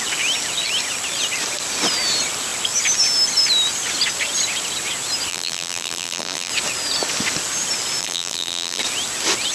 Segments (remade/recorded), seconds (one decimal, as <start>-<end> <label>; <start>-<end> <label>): 0.0-5.3 recorded; 5.3-6.5 remade; 6.5-8.0 recorded; 8.0-8.8 remade; 8.8-9.5 recorded